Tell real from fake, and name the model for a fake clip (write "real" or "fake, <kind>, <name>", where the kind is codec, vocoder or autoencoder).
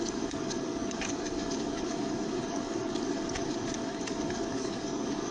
fake, codec, DAC